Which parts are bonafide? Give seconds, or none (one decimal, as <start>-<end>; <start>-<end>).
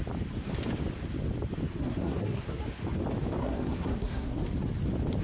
0.0-1.7; 2.6-3.4; 4.4-5.2